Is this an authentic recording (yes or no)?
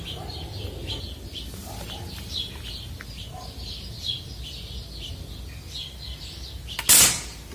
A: yes